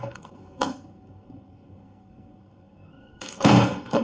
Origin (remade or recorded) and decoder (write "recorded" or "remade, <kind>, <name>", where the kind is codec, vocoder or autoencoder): remade, codec, SNAC